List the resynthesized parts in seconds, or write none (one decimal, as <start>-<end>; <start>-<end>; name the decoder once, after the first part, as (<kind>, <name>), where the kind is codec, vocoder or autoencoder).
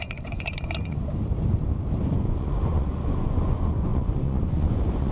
0.0-1.0 (vocoder, Vocos); 2.1-5.1